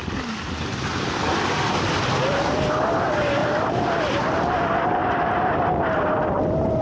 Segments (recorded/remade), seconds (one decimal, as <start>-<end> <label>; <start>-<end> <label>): 0.0-3.4 recorded; 3.4-4.6 remade; 4.6-5.0 recorded; 5.0-5.6 remade; 5.6-6.8 recorded